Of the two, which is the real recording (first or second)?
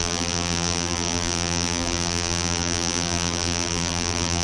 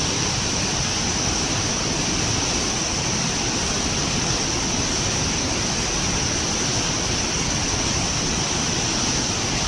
second